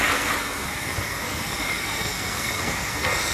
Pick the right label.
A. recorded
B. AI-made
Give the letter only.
B